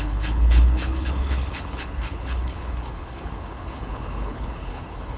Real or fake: fake